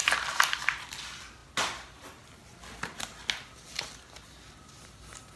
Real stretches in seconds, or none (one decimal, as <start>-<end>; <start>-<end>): 0.0-5.4